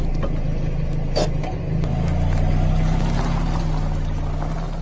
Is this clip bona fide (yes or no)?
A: yes